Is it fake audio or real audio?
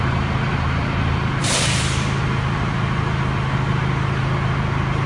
real